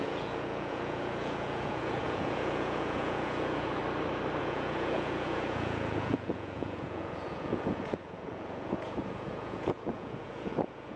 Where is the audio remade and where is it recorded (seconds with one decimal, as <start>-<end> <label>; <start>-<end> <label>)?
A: 0.0-3.8 remade; 3.8-4.4 recorded; 4.4-11.0 remade